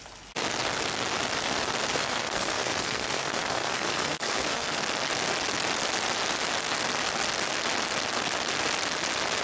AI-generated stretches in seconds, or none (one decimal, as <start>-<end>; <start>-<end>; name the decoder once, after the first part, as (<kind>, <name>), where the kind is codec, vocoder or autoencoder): 1.9-4.8 (codec, SNAC)